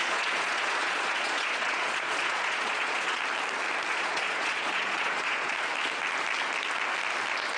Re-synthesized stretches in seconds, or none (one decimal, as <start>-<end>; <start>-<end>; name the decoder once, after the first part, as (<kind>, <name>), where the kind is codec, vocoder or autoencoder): 0.0-3.2 (vocoder, Vocos); 3.9-5.5